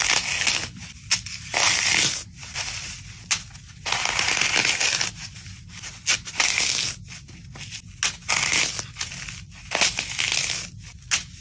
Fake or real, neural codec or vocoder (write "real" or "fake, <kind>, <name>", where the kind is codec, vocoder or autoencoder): real